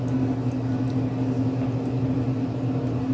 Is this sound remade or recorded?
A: recorded